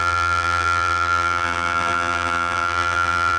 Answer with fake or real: fake